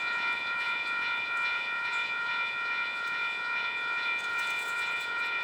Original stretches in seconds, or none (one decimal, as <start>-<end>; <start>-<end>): none